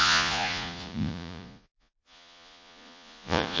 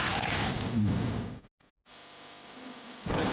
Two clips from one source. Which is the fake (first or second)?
first